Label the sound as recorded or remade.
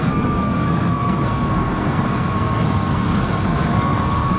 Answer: remade